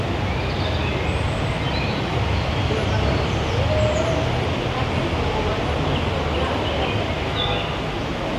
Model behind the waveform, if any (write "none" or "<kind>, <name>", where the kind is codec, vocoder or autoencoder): none